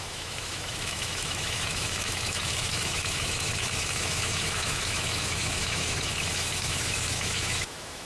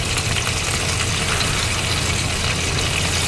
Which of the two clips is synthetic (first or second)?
first